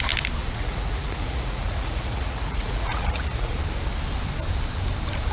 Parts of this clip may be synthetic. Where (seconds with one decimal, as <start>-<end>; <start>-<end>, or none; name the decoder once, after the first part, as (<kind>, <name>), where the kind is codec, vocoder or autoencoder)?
0.4-3.6 (vocoder, Vocos)